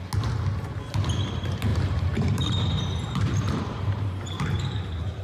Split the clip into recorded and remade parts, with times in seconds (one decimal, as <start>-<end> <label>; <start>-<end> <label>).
0.0-1.7 recorded; 1.7-4.8 remade; 4.8-5.2 recorded